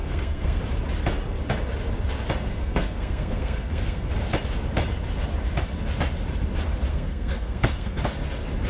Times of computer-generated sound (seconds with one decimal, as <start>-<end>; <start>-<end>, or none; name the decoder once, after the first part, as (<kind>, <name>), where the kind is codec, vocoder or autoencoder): 0.0-0.6 (codec, SNAC); 2.6-4.1; 6.9-8.0